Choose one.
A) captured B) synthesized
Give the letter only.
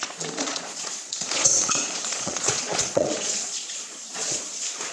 B